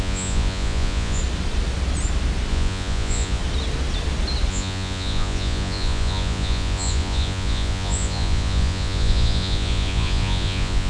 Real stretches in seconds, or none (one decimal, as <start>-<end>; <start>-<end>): 1.2-2.5; 3.4-4.5